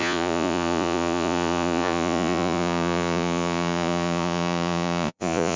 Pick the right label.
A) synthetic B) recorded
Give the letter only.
A